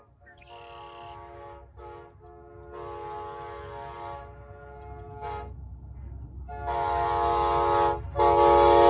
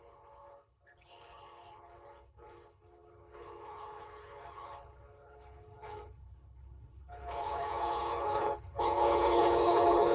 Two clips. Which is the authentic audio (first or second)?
first